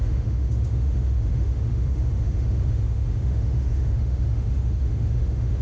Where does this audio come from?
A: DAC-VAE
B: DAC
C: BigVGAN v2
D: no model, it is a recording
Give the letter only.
A